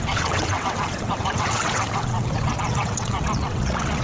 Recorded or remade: remade